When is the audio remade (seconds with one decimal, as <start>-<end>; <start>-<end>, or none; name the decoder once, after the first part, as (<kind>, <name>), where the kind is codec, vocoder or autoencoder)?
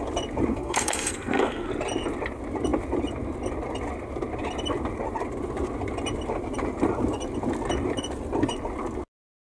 0.5-1.7 (codec, SNAC)